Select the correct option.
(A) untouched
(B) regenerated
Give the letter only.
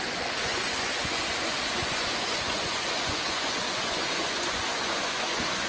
B